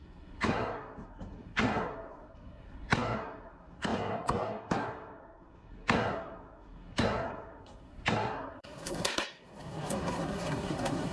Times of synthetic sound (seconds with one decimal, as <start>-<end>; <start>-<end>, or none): 0.0-11.1